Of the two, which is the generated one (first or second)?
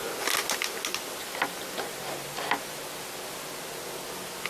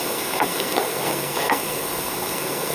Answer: second